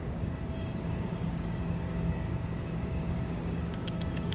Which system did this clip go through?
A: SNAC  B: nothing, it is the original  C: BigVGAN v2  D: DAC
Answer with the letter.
D